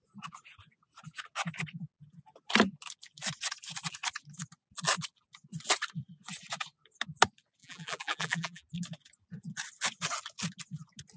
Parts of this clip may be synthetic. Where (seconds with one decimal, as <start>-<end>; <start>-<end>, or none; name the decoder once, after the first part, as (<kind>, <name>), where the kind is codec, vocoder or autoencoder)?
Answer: 7.6-8.7 (vocoder, BigVGAN v2)